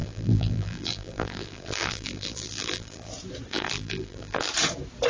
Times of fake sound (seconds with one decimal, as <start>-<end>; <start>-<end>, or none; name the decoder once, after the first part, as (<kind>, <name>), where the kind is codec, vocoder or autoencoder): 0.0-3.1 (vocoder, BigVGAN v2); 3.5-4.5